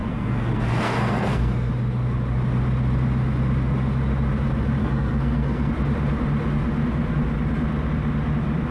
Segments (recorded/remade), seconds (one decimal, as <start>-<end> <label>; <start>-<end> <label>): 0.0-1.7 remade; 1.7-4.8 recorded; 4.8-5.7 remade; 5.7-8.7 recorded